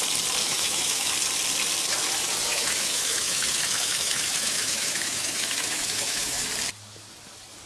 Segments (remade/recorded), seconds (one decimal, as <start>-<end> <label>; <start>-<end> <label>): 0.0-0.4 recorded; 0.4-1.1 remade; 1.1-2.5 recorded; 2.5-6.5 remade; 6.5-7.7 recorded